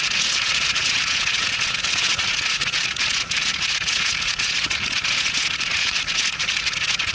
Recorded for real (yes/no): no